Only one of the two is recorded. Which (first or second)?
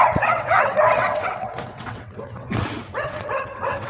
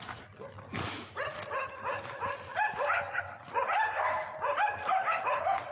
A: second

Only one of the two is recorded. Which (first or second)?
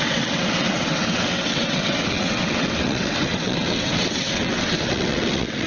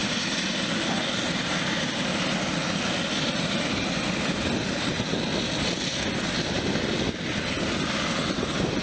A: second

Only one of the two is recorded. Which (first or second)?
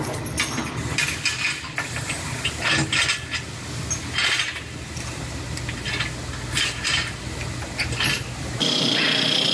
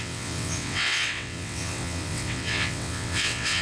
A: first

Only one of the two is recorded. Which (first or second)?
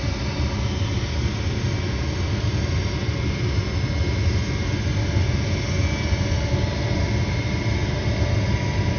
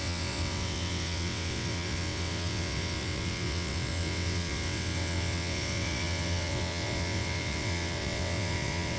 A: first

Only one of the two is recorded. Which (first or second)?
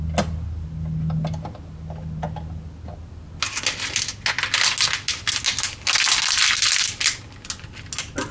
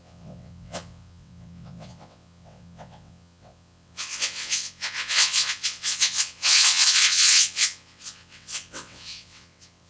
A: first